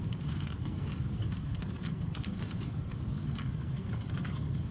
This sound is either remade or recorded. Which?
remade